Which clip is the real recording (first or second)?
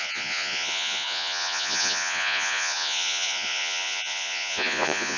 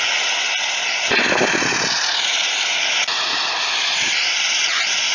second